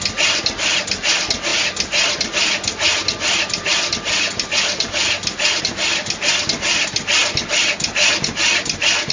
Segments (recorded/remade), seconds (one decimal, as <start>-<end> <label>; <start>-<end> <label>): 0.0-9.1 recorded